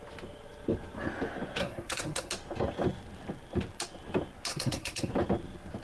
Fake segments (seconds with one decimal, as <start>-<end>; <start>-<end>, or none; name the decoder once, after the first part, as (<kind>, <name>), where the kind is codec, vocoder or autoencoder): 1.6-2.3 (codec, SNAC); 4.5-5.1